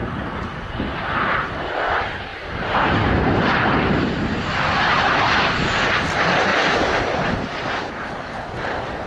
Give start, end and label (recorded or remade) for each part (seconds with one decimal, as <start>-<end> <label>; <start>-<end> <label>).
0.0-0.7 remade; 0.7-2.3 recorded; 2.3-4.1 remade; 4.1-6.5 recorded; 6.5-8.3 remade; 8.3-9.1 recorded